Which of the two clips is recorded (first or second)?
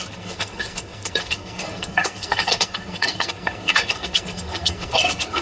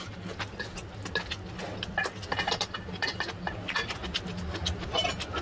second